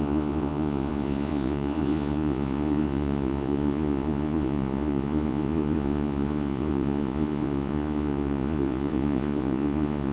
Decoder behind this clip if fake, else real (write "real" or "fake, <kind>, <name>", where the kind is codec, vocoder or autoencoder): fake, vocoder, Vocos